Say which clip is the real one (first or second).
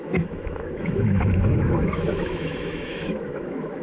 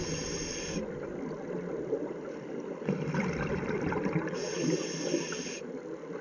second